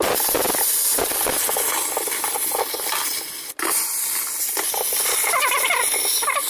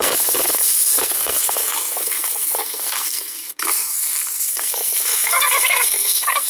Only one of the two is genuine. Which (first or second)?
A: first